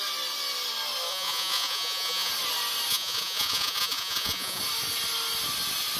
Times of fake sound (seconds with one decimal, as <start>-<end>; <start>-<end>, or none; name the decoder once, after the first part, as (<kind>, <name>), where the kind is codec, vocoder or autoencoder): 1.1-2.3 (vocoder, Vocos); 2.9-4.6